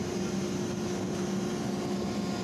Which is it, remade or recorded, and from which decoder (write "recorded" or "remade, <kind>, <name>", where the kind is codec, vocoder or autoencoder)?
recorded